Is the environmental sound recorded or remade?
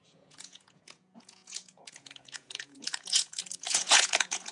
remade